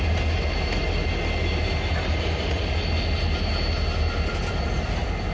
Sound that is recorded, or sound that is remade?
recorded